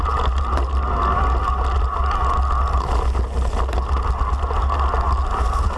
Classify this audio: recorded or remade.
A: recorded